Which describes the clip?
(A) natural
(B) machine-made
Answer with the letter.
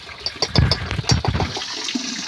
A